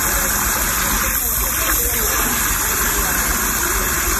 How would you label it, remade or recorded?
recorded